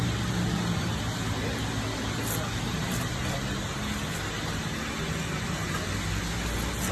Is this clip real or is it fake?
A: real